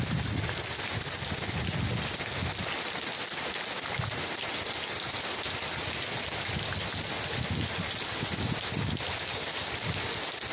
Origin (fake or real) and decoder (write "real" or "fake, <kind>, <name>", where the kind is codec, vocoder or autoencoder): real